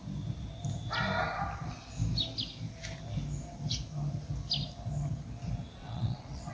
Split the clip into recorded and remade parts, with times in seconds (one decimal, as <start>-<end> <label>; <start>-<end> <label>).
0.0-5.8 recorded; 5.8-6.5 remade